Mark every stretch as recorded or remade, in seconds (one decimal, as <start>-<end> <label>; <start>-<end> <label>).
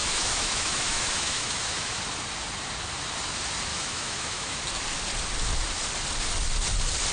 0.0-2.0 remade; 2.0-3.7 recorded; 3.7-4.6 remade; 4.6-7.1 recorded